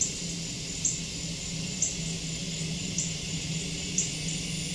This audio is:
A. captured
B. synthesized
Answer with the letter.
A